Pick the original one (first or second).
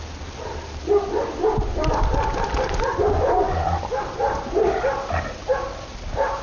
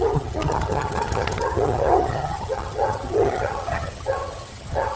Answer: first